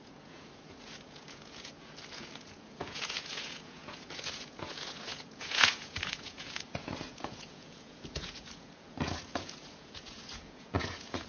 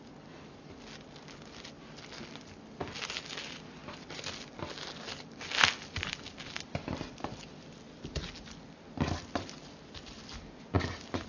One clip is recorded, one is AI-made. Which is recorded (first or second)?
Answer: second